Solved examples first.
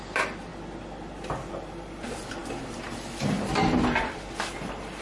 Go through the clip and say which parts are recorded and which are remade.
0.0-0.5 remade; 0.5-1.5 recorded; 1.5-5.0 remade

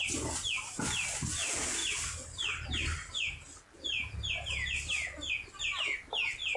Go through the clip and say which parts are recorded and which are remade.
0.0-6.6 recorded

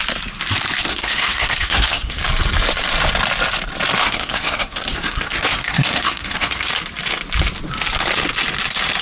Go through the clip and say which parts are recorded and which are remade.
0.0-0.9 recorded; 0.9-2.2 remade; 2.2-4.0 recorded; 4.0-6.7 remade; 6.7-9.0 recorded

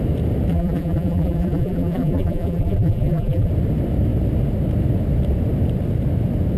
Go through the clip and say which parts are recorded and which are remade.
0.0-0.5 recorded; 0.5-3.5 remade; 3.5-6.6 recorded

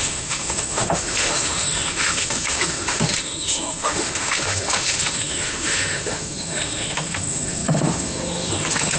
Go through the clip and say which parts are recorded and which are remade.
0.0-9.0 remade

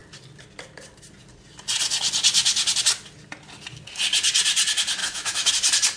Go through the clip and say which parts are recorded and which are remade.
0.0-5.0 recorded; 5.0-5.5 remade; 5.5-6.0 recorded